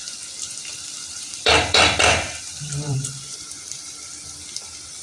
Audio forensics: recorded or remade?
remade